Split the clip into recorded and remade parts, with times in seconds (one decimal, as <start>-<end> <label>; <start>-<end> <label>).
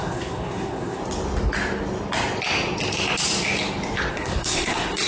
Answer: 0.0-1.0 remade; 1.0-4.1 recorded; 4.1-5.1 remade